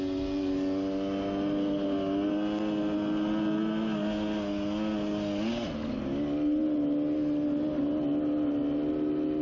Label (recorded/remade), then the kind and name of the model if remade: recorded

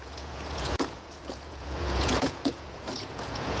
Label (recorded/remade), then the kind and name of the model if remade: remade, vocoder, Vocos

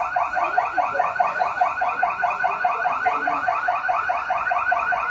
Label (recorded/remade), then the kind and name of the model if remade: remade, vocoder, Vocos